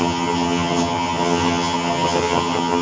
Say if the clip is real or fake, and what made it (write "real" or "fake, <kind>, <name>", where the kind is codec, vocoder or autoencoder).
fake, vocoder, HiFi-GAN